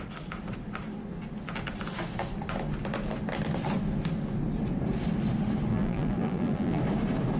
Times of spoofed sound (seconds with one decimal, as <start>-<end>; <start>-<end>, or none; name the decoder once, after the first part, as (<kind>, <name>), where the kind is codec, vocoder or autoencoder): 5.7-6.8 (vocoder, BigVGAN v2)